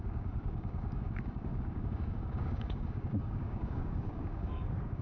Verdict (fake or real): fake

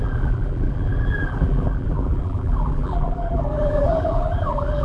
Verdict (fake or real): fake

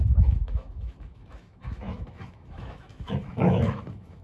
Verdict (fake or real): fake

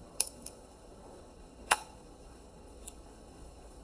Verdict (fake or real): fake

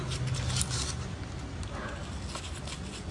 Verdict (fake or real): real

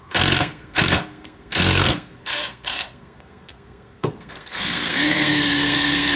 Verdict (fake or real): fake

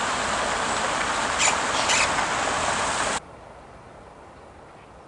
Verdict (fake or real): real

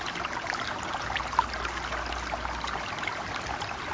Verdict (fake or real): real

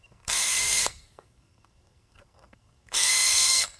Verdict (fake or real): fake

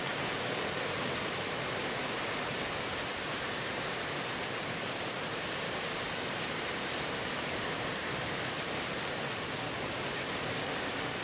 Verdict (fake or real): fake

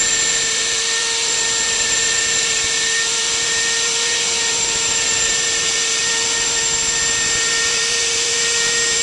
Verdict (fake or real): fake